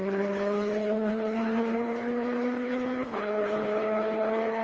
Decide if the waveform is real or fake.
fake